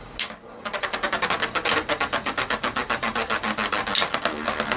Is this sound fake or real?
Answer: real